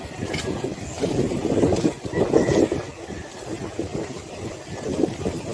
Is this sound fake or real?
real